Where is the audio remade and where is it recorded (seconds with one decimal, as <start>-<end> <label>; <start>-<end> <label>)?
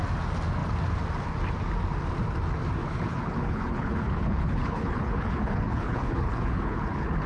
0.0-2.8 recorded; 2.8-7.3 remade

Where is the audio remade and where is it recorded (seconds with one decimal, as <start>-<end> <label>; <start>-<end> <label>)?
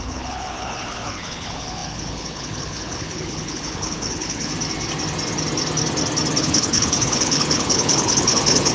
0.0-4.5 remade; 4.5-6.4 recorded; 6.4-8.7 remade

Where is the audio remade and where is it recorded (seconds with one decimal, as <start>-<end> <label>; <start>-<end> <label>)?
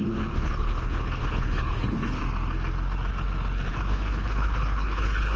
0.0-2.2 remade; 2.2-3.7 recorded; 3.7-5.4 remade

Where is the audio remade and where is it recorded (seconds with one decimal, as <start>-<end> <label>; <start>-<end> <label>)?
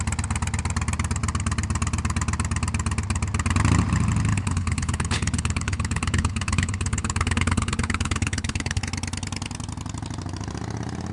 0.0-4.3 recorded; 4.3-8.8 remade; 8.8-11.1 recorded